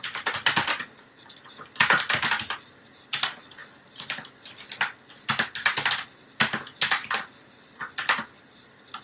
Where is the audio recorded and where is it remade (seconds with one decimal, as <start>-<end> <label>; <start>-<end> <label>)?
0.0-9.0 recorded